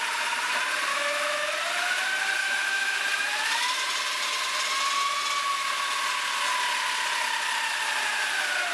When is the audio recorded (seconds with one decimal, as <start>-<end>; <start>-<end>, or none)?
0.0-0.9; 1.5-2.4; 3.0-8.7